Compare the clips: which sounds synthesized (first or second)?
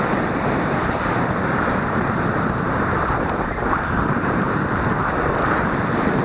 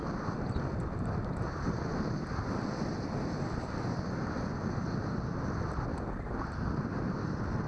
first